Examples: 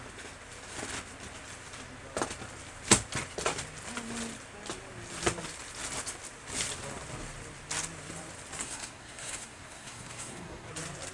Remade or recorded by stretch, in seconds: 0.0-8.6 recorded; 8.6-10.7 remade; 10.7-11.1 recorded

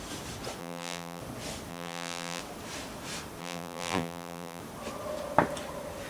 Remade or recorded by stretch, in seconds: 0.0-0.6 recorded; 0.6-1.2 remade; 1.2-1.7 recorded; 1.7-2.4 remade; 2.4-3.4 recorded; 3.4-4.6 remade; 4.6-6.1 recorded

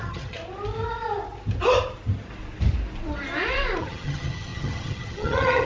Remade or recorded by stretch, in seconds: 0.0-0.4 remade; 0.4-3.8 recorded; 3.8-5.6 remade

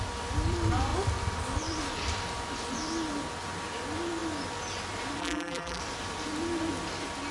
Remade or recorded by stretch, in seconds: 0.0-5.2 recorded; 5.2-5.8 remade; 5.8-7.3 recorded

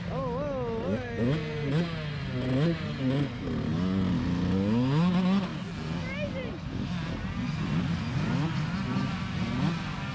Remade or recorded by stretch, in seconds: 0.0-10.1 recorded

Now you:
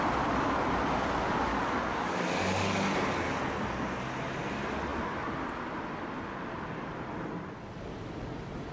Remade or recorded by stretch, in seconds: 0.0-1.5 recorded; 1.5-2.3 remade; 2.3-8.7 recorded